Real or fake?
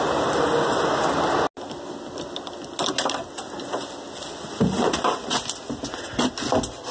real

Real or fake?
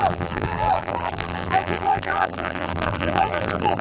fake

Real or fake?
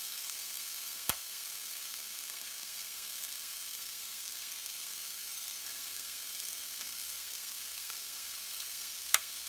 fake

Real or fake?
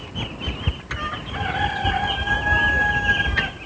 real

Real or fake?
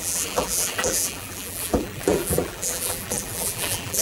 fake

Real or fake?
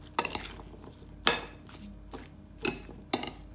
real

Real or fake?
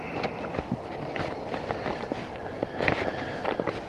fake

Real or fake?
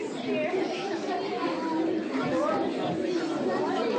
real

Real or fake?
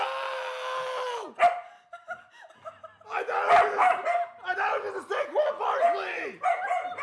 real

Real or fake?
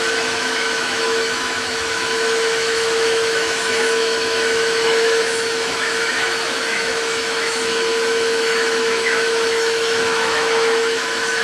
fake